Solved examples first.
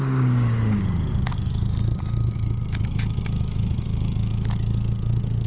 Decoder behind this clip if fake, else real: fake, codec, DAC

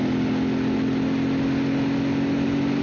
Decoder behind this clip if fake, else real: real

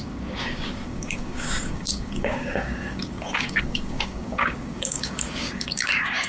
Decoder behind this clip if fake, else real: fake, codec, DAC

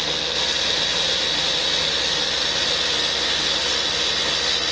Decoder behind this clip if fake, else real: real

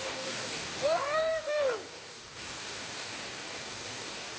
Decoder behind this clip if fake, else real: fake, codec, DAC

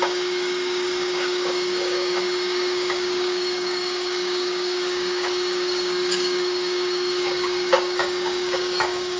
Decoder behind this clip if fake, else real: fake, codec, DAC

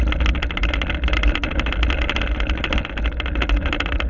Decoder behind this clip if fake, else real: real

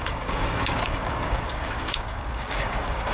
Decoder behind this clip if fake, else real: fake, codec, DAC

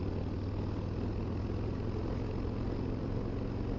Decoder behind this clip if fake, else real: real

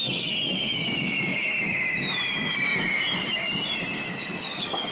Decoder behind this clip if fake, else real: fake, codec, DAC